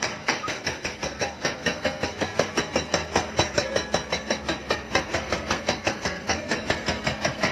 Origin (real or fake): fake